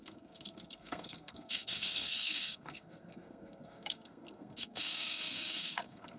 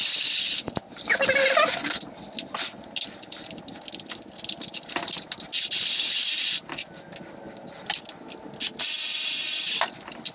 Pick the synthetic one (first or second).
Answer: first